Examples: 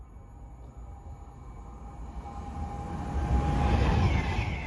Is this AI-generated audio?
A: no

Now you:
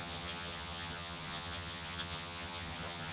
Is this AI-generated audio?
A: yes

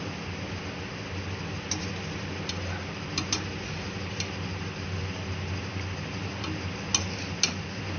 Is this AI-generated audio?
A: no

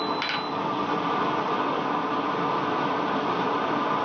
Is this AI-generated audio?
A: no